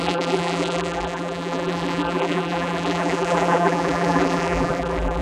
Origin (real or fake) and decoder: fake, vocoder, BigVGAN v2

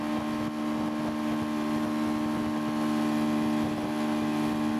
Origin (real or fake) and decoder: real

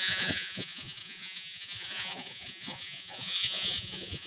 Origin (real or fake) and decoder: fake, vocoder, Vocos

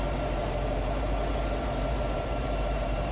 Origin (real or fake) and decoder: fake, vocoder, BigVGAN v2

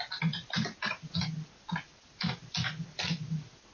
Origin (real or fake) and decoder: real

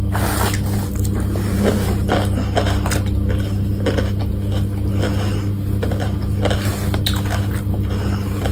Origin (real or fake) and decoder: real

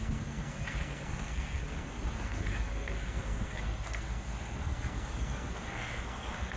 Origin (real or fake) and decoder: fake, codec, SNAC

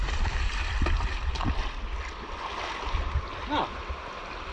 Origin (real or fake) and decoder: real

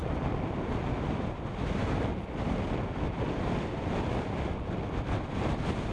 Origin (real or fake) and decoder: real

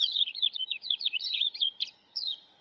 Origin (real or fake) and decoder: fake, vocoder, Vocos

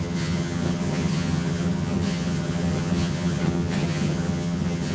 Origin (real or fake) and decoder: fake, vocoder, HiFi-GAN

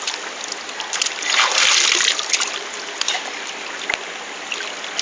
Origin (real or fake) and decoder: real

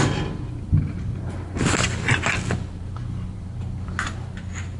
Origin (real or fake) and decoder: real